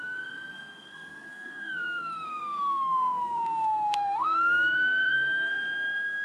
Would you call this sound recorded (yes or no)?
no